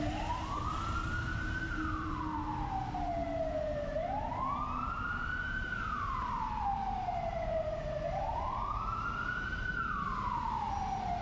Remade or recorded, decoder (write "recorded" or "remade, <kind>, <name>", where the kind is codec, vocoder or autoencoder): remade, vocoder, BigVGAN v2